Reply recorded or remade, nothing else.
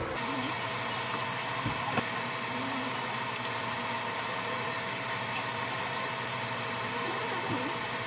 recorded